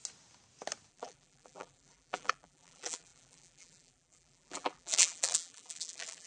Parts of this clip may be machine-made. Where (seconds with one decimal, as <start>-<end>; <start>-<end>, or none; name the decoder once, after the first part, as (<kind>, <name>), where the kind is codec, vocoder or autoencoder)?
0.9-6.3 (vocoder, BigVGAN v2)